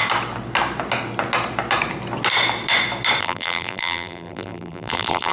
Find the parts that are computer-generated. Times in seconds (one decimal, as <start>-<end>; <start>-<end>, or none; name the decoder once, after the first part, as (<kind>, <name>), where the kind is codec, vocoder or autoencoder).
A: 3.2-5.3 (vocoder, BigVGAN v2)

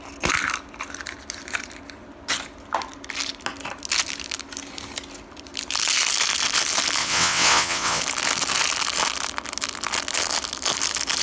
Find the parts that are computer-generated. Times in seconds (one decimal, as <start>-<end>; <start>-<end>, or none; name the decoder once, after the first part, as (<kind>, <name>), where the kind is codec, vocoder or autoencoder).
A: 7.0-8.0 (vocoder, WaveNeXt)

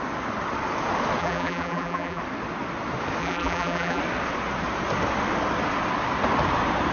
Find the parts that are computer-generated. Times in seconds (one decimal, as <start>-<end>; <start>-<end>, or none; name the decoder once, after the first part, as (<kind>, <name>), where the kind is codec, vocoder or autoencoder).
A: 1.2-2.2 (vocoder, BigVGAN v2); 3.2-4.0

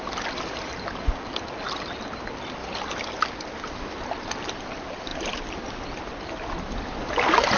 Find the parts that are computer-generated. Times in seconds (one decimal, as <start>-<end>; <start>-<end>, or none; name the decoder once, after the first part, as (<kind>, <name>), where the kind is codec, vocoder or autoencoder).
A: none

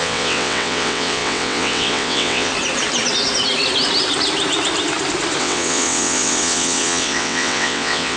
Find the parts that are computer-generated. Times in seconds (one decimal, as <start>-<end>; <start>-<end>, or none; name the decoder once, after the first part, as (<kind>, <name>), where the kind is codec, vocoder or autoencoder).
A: 0.0-2.5 (vocoder, WaveNeXt); 5.4-8.2

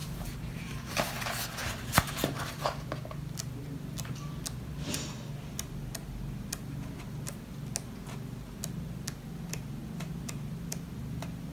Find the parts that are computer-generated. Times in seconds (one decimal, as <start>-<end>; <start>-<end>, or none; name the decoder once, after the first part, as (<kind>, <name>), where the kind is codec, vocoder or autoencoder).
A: 0.0-1.1 (vocoder, BigVGAN v2); 1.6-2.9